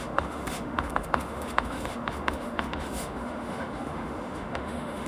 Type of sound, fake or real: fake